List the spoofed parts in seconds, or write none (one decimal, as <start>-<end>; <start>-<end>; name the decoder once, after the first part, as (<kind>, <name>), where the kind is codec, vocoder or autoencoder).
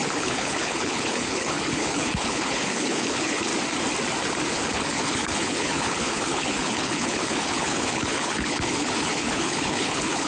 0.0-3.5 (codec, HILCodec); 4.5-10.3